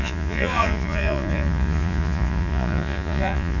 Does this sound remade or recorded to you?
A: remade